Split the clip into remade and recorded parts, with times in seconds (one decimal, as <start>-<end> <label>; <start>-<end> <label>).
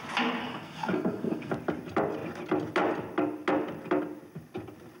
0.0-0.4 recorded; 0.4-1.5 remade; 1.5-5.0 recorded